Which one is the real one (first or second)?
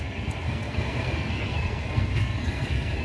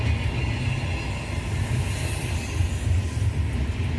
second